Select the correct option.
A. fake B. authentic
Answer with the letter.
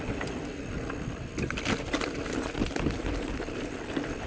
B